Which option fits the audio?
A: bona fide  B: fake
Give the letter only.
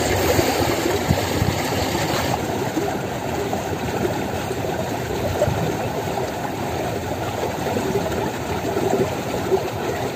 B